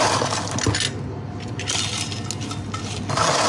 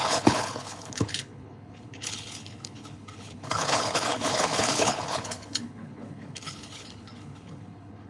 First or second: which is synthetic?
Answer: second